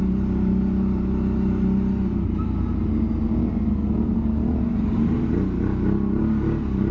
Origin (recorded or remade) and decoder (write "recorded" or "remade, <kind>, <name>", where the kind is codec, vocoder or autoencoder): recorded